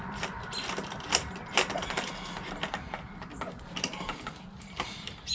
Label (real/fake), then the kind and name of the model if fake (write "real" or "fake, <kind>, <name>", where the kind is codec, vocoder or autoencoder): real